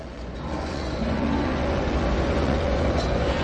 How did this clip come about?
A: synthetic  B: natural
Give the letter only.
A